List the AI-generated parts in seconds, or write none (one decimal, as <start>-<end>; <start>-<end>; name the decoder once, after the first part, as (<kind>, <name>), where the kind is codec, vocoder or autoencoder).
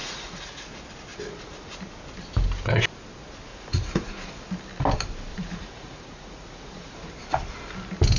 0.0-0.7 (vocoder, Vocos); 1.1-1.8; 3.5-4.3; 5.3-7.1